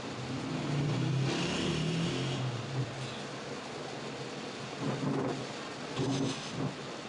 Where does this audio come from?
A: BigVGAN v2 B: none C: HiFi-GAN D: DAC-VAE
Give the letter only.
B